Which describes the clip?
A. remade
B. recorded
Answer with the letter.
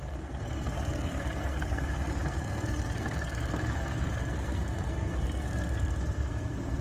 A